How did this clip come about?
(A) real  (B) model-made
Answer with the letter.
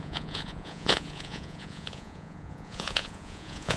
B